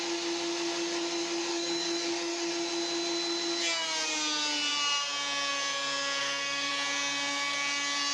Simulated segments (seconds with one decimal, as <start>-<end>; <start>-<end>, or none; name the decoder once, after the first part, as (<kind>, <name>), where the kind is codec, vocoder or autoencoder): 1.5-2.5 (codec, DAC); 6.2-6.7